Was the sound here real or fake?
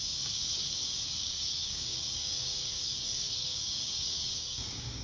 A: fake